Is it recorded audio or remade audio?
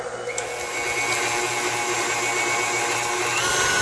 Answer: recorded